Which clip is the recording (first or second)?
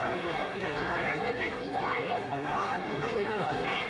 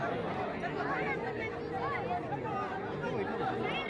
second